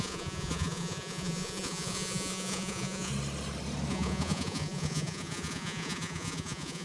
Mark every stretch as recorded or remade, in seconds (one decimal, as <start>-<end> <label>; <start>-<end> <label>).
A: 0.0-3.1 remade; 3.1-3.9 recorded; 3.9-6.8 remade